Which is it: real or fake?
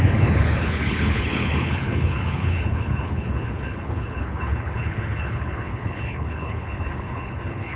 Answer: fake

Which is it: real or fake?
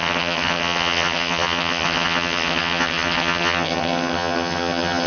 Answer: fake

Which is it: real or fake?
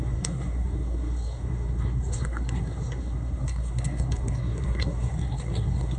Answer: fake